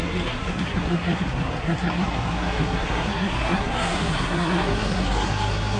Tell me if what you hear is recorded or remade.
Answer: remade